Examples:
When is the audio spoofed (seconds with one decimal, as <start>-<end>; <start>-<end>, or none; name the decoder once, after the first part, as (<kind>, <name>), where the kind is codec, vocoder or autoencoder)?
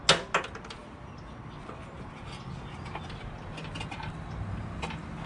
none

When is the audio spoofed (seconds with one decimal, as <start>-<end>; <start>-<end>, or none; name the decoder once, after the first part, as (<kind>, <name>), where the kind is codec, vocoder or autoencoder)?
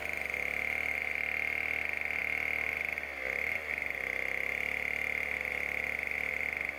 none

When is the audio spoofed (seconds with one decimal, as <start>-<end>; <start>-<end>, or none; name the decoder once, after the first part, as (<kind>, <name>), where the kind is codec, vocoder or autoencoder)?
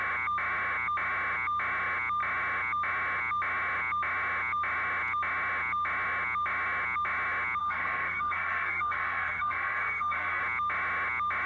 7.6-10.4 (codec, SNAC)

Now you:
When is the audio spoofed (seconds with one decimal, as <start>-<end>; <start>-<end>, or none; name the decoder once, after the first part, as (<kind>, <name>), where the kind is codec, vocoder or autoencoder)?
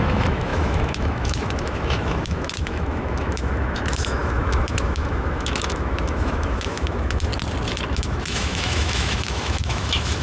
0.0-7.3 (autoencoder, DAC-VAE); 7.9-10.2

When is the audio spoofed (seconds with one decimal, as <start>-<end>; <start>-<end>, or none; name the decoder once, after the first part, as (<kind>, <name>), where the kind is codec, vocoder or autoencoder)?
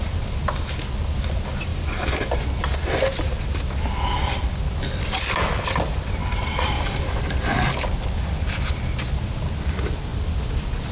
1.7-2.4 (vocoder, BigVGAN v2); 6.2-7.0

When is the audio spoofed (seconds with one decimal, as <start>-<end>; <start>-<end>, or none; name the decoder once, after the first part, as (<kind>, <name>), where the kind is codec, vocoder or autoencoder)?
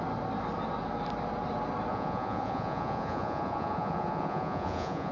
1.9-5.1 (vocoder, Vocos)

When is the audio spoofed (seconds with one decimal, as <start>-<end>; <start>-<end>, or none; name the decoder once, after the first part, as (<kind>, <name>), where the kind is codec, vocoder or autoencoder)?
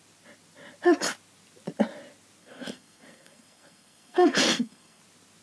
2.4-5.0 (codec, SNAC)